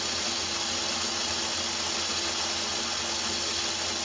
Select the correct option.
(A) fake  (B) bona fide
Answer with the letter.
B